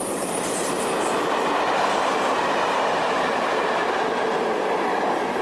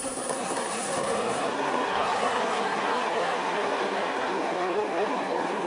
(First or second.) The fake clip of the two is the second